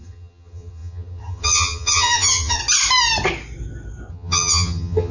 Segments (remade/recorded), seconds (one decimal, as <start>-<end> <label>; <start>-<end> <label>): 0.0-2.6 remade; 2.6-4.1 recorded; 4.1-5.1 remade